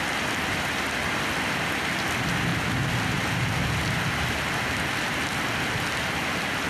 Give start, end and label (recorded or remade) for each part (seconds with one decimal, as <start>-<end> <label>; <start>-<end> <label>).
0.0-6.7 recorded